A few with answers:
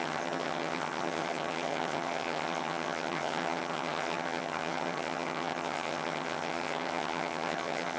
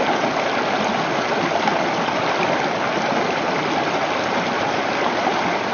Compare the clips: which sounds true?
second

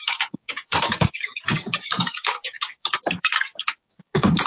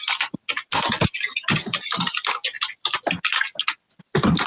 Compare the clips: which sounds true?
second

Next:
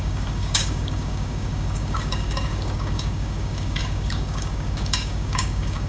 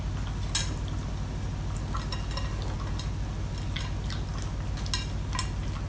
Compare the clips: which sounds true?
second